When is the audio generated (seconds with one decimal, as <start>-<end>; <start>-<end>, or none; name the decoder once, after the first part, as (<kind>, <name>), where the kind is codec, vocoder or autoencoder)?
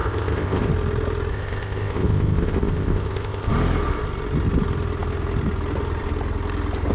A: 0.0-0.7 (codec, ZipCodec); 1.3-3.5